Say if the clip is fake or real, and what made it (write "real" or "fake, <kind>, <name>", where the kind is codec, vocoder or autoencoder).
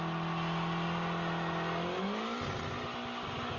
real